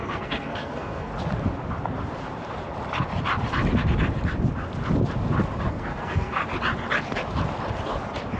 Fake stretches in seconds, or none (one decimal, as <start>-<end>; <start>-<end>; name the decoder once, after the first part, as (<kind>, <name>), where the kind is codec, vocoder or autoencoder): 0.0-1.1 (codec, SNAC); 5.7-6.4